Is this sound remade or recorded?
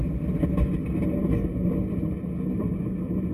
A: recorded